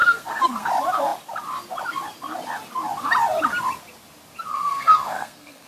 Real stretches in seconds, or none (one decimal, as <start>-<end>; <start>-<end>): 0.7-4.5